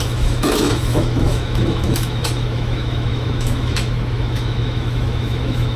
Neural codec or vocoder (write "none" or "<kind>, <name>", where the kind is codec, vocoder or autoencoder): autoencoder, DAC-VAE